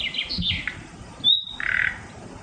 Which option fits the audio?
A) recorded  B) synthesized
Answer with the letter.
A